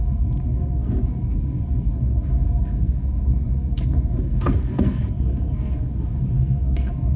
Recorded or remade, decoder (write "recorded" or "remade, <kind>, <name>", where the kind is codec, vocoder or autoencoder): remade, codec, SNAC